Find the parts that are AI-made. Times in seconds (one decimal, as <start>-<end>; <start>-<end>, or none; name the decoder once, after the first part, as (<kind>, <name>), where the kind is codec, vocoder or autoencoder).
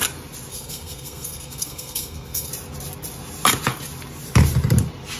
0.5-2.5 (codec, SNAC)